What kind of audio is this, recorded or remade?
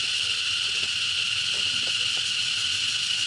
recorded